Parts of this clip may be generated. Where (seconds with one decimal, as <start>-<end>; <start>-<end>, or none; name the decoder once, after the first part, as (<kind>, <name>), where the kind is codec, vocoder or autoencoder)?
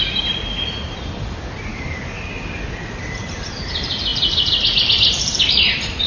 1.7-2.3 (codec, DAC)